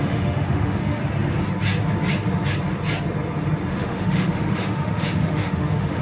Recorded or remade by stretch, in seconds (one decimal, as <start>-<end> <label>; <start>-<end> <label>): 0.0-1.0 remade; 1.0-3.7 recorded; 3.7-6.0 remade